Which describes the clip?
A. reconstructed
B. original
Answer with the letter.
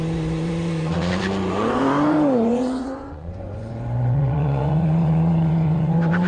A